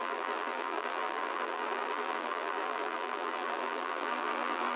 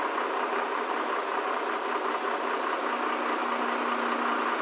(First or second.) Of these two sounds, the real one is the second